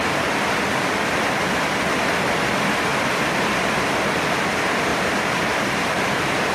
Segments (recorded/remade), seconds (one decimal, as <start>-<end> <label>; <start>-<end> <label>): 0.0-4.9 recorded; 4.9-6.1 remade; 6.1-6.5 recorded